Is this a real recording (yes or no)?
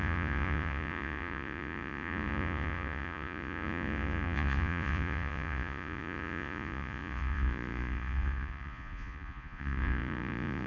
no